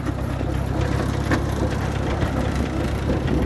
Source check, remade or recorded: recorded